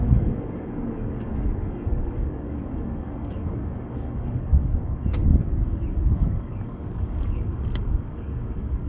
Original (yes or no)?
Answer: no